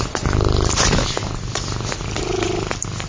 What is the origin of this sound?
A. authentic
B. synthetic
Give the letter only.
A